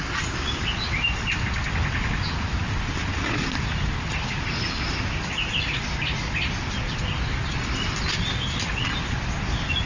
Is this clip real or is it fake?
real